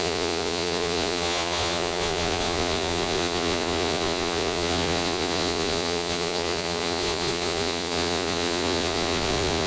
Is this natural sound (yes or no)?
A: no